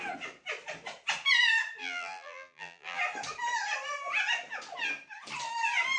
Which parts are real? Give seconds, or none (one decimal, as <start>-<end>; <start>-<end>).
0.0-1.8; 3.0-6.0